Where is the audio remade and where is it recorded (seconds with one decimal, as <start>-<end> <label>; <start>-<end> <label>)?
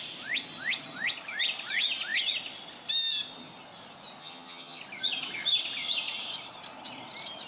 0.0-4.2 recorded; 4.2-4.8 remade; 4.8-7.5 recorded